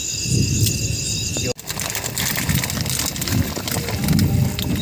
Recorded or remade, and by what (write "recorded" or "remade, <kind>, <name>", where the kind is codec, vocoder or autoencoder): recorded